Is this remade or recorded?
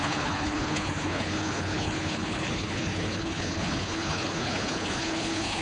remade